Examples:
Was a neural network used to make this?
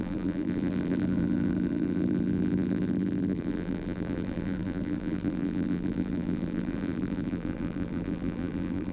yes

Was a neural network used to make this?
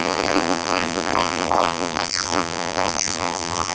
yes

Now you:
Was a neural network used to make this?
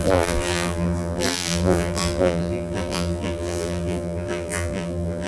yes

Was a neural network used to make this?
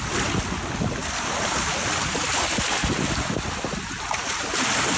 yes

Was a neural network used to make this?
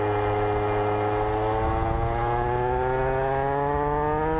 no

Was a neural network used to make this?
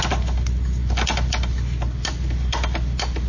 no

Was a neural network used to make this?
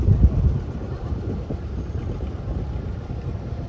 yes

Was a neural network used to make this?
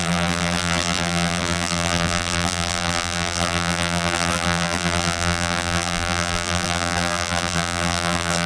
yes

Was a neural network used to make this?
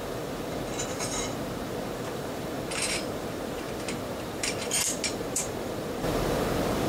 yes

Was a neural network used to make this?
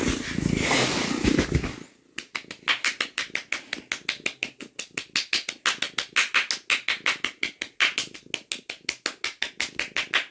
no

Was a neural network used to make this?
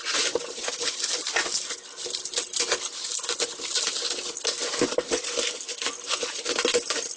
no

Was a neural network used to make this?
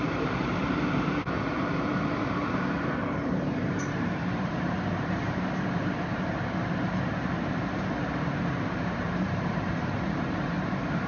yes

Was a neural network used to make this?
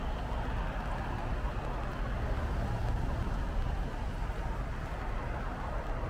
no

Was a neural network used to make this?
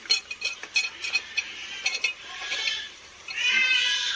yes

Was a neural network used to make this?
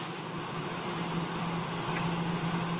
no